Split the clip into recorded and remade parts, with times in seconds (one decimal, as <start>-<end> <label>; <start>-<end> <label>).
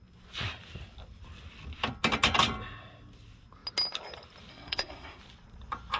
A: 0.0-4.5 recorded; 4.5-5.2 remade; 5.2-6.0 recorded